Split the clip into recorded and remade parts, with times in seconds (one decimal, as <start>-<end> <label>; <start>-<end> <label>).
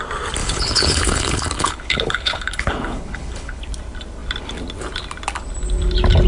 0.0-0.4 recorded; 0.4-3.6 remade; 3.6-6.3 recorded